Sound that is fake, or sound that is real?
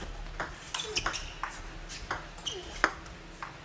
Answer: real